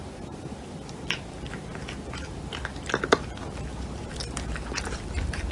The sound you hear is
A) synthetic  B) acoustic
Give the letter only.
B